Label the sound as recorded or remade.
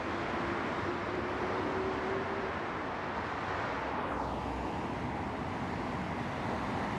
recorded